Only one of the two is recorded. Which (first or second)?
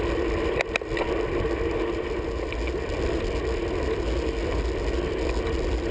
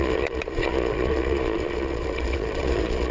first